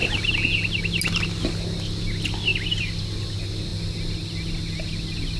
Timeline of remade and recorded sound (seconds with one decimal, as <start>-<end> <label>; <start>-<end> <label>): 0.0-5.4 recorded